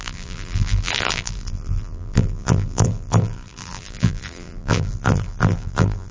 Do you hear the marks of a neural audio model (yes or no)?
yes